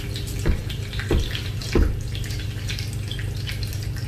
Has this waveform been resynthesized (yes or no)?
no